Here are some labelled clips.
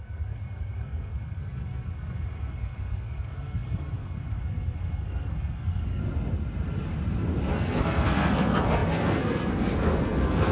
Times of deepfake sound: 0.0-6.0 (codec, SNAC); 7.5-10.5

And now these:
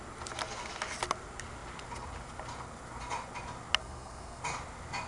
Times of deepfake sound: 3.8-4.4 (codec, SNAC)

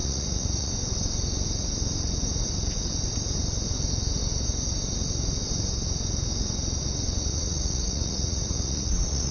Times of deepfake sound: 0.0-0.7 (vocoder, Vocos); 7.3-9.3

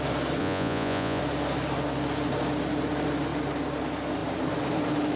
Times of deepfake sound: 0.4-1.2 (vocoder, Vocos)

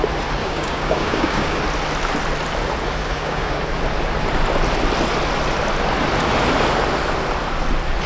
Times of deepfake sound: 0.4-1.6 (codec, DAC); 3.0-3.6

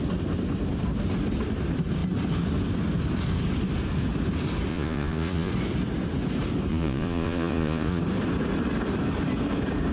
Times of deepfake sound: 4.7-5.5 (vocoder, Vocos); 6.7-8.0

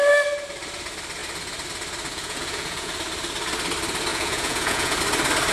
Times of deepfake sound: 2.1-2.9 (vocoder, Vocos); 4.1-5.0

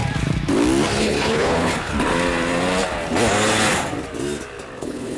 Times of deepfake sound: 1.0-1.9 (codec, HILCodec); 4.8-5.2